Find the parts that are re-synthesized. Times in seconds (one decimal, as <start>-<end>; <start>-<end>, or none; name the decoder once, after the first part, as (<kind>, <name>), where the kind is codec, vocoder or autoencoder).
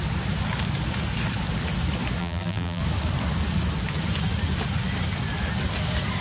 2.2-2.8 (vocoder, BigVGAN v2)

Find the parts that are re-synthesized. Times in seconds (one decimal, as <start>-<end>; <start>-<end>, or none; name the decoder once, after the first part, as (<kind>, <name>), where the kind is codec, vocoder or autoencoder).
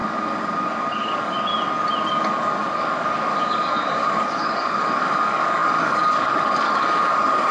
0.8-1.5 (codec, DAC); 2.1-7.5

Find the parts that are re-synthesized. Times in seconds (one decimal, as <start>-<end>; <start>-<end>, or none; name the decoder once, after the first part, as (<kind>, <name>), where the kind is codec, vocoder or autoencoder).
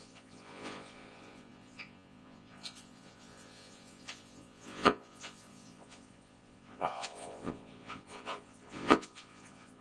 0.0-9.8 (vocoder, Vocos)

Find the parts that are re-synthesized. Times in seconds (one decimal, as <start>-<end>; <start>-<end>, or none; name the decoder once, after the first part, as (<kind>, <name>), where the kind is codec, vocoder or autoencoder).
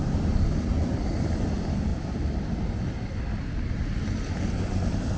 none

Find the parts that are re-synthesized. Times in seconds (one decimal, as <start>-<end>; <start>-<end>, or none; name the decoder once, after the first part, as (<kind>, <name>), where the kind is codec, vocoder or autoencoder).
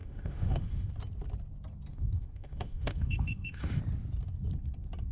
0.0-0.9 (autoencoder, DAC-VAE); 1.9-3.8